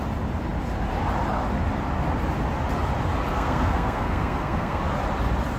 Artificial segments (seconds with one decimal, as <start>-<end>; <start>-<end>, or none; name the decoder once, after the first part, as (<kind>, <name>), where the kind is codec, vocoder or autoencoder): 3.3-4.8 (codec, SNAC)